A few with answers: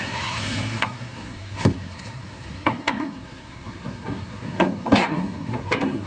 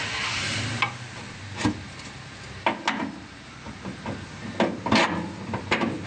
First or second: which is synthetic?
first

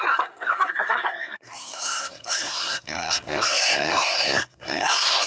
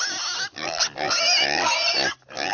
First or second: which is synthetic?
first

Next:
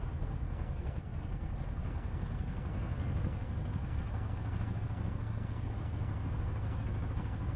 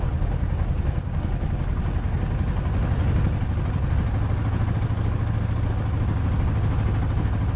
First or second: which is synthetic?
first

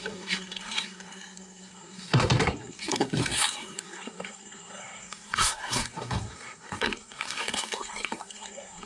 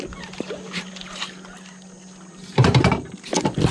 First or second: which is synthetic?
first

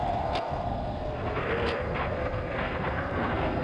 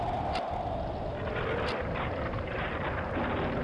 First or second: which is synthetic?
first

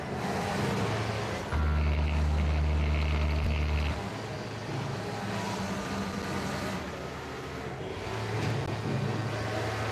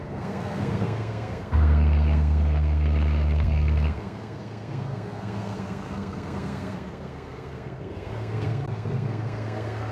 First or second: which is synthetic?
second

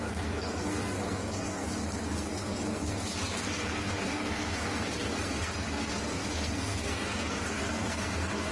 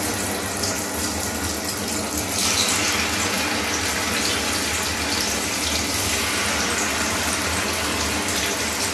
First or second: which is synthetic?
first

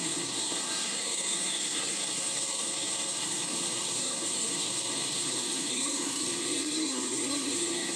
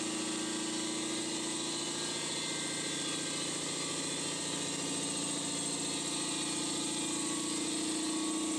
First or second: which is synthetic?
first